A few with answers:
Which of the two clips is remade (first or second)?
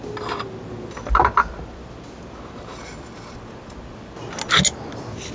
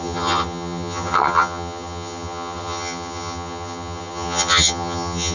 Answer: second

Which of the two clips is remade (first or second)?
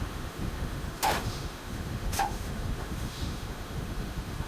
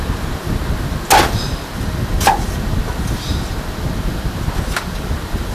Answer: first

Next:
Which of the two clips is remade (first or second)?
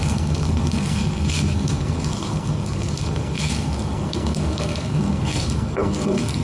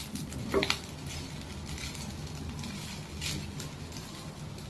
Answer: first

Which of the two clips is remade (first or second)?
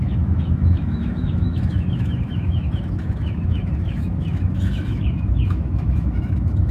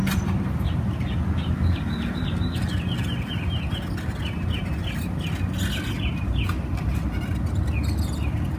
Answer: first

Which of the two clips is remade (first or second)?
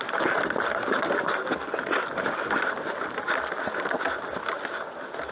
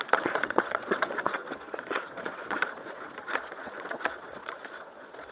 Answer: second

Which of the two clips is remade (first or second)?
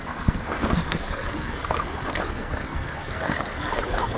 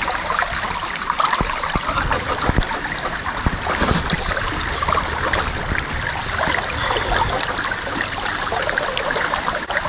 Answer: first